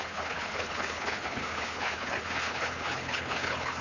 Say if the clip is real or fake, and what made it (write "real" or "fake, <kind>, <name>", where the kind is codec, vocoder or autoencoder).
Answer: fake, codec, HILCodec